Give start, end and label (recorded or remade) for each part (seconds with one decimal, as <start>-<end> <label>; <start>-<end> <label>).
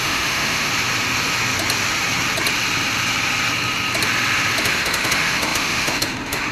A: 0.0-0.7 remade; 0.7-4.6 recorded; 4.6-6.5 remade